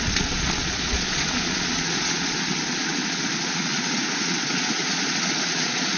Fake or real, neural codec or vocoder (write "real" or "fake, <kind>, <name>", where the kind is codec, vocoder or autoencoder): fake, vocoder, Vocos